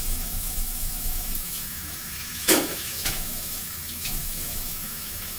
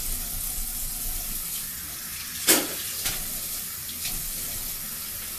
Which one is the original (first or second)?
second